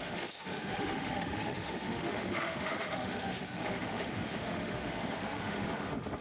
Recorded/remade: remade